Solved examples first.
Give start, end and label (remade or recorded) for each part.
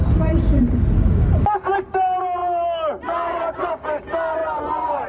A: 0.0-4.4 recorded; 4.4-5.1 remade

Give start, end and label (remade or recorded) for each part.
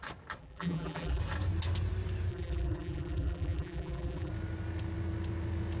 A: 0.0-0.4 recorded; 0.4-1.2 remade; 1.2-2.3 recorded; 2.3-4.3 remade; 4.3-5.8 recorded